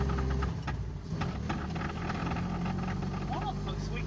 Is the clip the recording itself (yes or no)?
yes